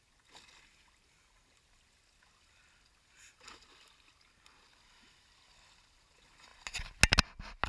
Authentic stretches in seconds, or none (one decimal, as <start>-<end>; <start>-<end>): 0.0-7.7